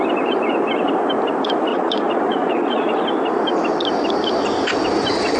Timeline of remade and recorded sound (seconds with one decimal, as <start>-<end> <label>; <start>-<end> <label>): 0.0-1.7 recorded; 1.7-3.0 remade; 3.0-5.4 recorded